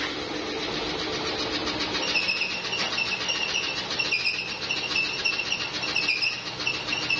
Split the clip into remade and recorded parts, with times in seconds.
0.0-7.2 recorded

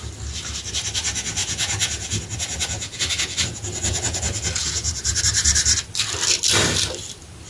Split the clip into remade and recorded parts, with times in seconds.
0.0-1.4 recorded; 1.4-5.2 remade; 5.2-7.5 recorded